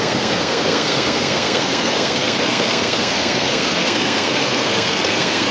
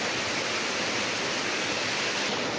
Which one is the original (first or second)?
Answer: second